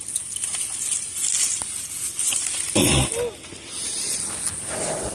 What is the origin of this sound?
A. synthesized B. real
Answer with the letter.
B